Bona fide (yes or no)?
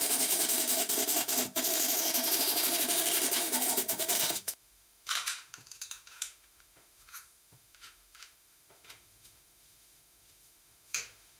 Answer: no